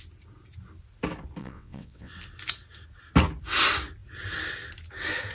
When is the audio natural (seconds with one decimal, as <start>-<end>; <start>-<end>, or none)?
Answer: 0.0-1.4; 2.1-5.3